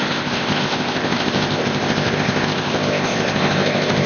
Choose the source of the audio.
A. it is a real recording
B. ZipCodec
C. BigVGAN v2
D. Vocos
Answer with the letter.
B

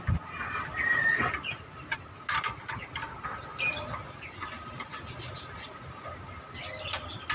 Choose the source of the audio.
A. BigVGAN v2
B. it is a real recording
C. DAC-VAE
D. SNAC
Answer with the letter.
B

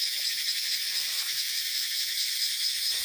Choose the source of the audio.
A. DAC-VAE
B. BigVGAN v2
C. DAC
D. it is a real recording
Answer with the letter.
A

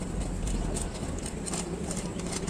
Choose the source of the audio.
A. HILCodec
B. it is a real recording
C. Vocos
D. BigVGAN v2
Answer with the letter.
B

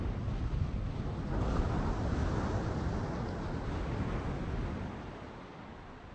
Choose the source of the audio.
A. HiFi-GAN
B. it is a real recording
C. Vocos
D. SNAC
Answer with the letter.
B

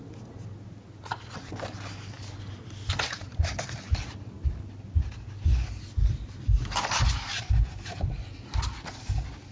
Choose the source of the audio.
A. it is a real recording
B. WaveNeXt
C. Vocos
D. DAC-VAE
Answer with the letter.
A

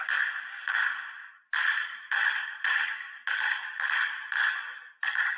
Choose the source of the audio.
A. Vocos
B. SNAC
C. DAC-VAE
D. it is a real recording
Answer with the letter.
D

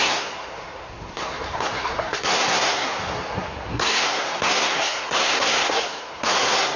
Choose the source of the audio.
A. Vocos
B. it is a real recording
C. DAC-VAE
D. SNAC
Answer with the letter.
D